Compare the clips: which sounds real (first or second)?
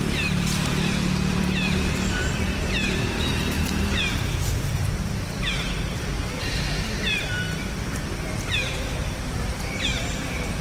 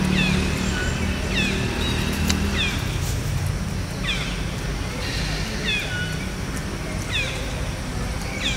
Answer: second